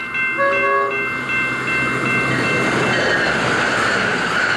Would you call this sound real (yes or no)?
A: yes